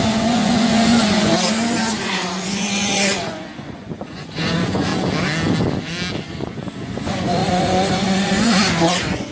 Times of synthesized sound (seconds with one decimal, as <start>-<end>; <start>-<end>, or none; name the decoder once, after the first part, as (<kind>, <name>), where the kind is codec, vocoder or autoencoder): 0.0-1.3 (vocoder, Vocos); 2.0-4.9; 6.2-9.3